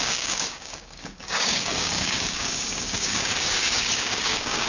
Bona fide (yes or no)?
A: no